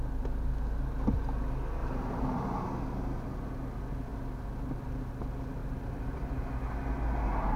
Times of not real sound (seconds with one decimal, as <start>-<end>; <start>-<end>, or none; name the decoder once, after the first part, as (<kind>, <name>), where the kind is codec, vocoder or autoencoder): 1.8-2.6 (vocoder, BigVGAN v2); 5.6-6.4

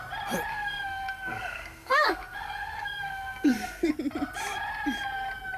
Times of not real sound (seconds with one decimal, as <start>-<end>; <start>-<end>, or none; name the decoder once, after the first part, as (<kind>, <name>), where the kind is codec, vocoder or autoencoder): 0.5-3.9 (codec, SNAC)

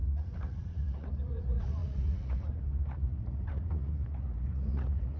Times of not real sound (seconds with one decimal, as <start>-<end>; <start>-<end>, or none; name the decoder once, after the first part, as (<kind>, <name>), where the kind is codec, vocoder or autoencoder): 0.0-5.2 (vocoder, Vocos)

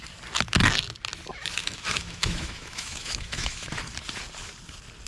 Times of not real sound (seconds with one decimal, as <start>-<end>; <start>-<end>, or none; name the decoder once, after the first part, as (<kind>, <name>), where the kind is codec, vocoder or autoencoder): 1.3-3.7 (autoencoder, DAC-VAE)

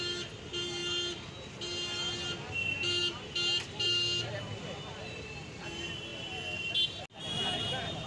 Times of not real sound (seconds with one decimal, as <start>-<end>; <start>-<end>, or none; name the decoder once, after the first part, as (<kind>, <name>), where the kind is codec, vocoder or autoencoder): none